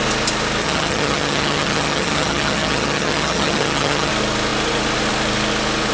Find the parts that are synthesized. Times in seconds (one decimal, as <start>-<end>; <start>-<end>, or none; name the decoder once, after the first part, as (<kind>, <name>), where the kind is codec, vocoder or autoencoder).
0.6-4.1 (vocoder, HiFi-GAN)

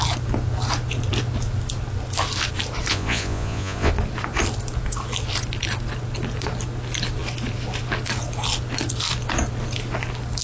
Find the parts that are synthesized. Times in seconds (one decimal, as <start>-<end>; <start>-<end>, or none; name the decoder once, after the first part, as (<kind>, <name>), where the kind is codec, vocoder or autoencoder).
2.9-3.9 (vocoder, Vocos)

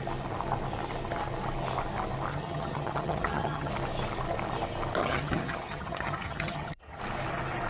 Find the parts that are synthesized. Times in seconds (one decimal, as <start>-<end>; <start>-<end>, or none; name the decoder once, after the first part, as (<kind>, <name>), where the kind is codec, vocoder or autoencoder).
2.3-3.7 (vocoder, HiFi-GAN); 5.0-7.0

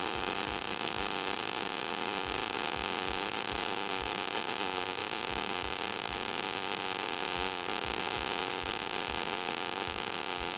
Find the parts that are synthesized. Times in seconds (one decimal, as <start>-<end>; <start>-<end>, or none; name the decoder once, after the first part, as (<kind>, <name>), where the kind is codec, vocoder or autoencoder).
0.0-2.4 (vocoder, BigVGAN v2); 3.3-7.7; 8.4-10.6

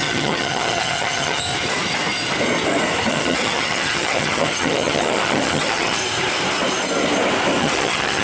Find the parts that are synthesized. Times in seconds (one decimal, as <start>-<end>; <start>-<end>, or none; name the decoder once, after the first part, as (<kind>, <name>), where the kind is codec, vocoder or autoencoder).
0.0-1.4 (vocoder, HiFi-GAN); 3.1-6.0; 7.6-8.2